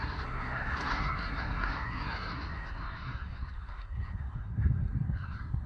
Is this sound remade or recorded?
remade